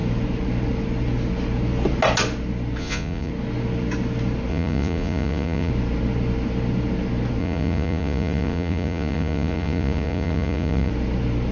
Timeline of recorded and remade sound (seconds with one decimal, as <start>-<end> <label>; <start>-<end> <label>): 0.0-2.8 recorded; 2.8-3.3 remade; 3.3-4.5 recorded; 4.5-5.7 remade; 5.7-7.4 recorded; 7.4-10.9 remade; 10.9-11.5 recorded